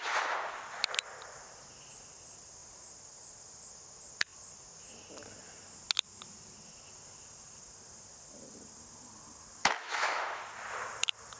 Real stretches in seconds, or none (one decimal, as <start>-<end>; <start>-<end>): 0.0-9.6; 10.4-11.4